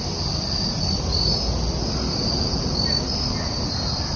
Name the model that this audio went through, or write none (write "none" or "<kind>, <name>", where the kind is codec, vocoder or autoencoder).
none